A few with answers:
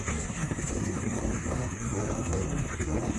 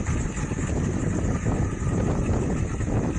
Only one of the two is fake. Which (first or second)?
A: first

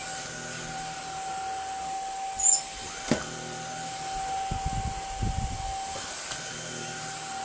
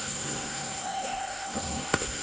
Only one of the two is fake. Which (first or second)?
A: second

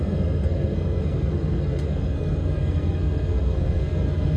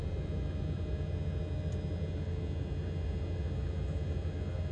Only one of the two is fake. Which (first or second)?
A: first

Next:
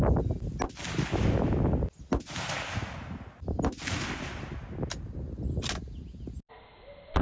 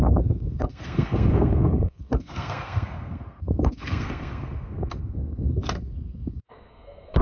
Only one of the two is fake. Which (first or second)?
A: second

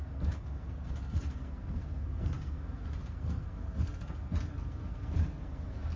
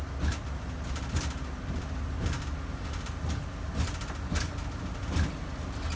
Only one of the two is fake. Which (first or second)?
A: first